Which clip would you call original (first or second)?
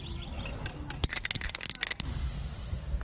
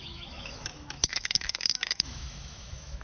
first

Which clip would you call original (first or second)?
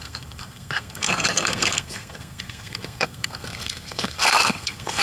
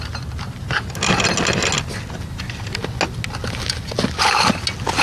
second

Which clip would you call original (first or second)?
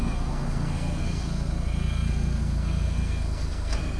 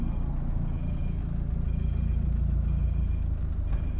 second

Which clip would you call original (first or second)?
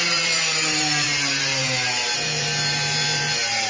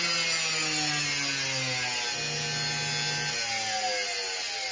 second